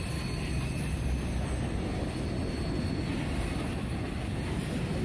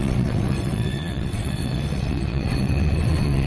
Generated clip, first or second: second